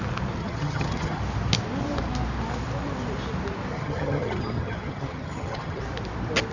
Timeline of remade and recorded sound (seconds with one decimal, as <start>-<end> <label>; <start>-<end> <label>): 0.0-0.4 recorded; 0.4-1.2 remade; 1.2-3.7 recorded; 3.7-5.8 remade; 5.8-6.5 recorded